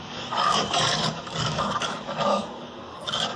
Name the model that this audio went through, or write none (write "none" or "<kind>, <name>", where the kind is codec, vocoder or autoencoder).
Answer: codec, DAC